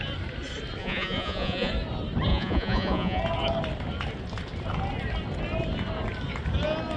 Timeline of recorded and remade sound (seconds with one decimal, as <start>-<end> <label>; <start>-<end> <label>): 0.0-0.8 recorded; 0.8-1.7 remade; 1.7-2.3 recorded; 2.3-3.2 remade; 3.2-7.0 recorded